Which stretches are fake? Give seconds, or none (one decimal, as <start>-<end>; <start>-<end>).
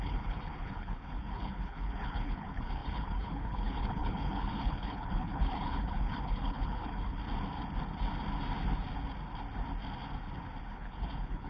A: 0.0-7.2; 10.7-11.5